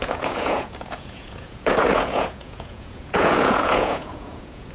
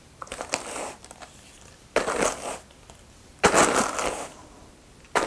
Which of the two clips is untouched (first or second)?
second